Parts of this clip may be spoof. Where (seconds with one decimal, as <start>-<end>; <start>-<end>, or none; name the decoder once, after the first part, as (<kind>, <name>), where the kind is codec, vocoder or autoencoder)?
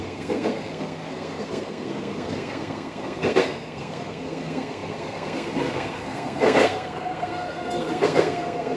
0.0-8.8 (codec, SNAC)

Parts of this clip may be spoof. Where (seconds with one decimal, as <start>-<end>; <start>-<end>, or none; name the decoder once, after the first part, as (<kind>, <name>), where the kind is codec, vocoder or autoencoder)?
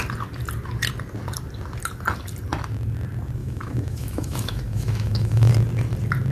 3.4-5.5 (autoencoder, DAC-VAE)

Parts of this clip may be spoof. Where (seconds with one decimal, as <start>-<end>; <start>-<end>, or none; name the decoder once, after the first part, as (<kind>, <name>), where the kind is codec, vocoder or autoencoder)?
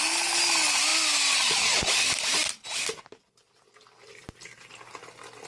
none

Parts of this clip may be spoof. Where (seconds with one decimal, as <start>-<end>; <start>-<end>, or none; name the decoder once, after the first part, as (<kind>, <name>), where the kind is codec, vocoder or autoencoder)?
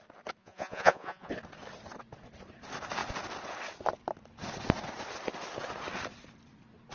0.4-1.3 (vocoder, Vocos)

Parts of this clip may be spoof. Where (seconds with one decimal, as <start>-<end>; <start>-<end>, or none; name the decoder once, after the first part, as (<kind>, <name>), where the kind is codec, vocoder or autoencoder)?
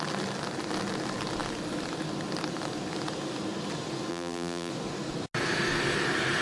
4.1-4.7 (vocoder, BigVGAN v2)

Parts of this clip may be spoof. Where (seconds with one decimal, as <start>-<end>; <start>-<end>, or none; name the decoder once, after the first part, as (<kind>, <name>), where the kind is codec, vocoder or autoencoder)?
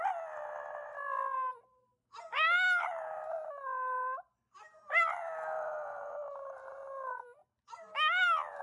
none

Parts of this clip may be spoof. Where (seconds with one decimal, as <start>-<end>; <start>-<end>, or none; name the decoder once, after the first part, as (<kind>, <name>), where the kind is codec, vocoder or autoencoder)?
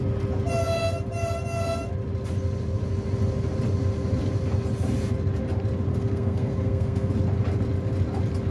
5.9-7.1 (codec, SNAC)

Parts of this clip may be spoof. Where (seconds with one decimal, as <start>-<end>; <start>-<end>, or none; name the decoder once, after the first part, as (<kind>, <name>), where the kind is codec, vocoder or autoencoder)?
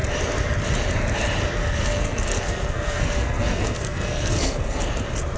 1.6-4.8 (codec, SNAC)